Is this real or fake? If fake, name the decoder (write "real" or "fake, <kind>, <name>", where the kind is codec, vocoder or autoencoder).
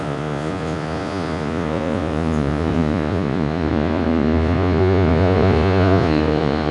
fake, vocoder, Vocos